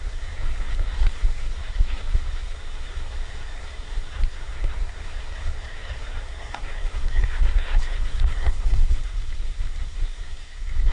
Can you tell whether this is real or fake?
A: fake